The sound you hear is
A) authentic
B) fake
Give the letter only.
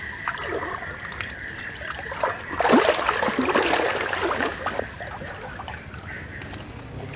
A